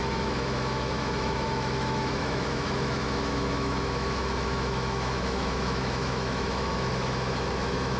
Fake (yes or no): yes